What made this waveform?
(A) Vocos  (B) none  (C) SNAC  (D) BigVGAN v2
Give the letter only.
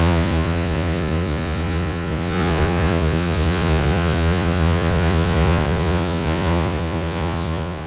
A